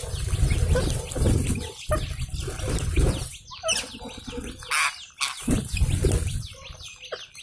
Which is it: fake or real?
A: real